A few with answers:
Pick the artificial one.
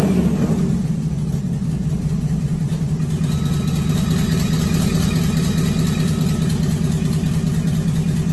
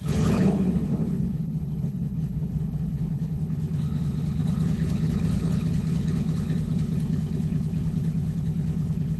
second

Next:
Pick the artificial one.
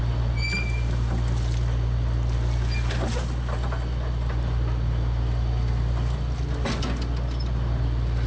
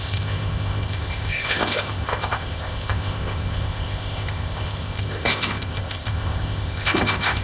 second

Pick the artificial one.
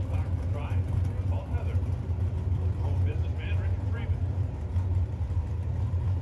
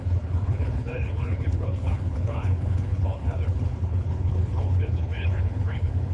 second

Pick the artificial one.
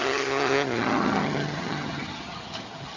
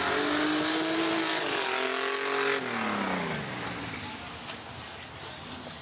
first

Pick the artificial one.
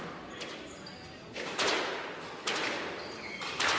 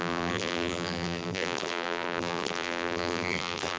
second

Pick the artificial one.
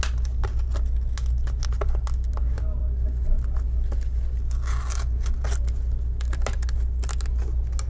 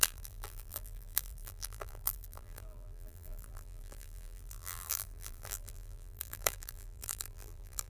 second